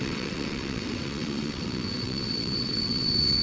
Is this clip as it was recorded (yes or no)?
no